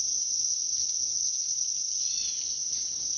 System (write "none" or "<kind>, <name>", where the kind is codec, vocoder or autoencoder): none